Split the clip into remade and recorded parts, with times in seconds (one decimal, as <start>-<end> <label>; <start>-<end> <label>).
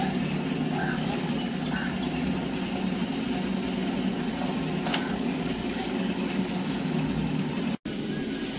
0.0-0.8 recorded; 0.8-1.3 remade; 1.3-4.9 recorded; 4.9-7.5 remade; 7.5-8.6 recorded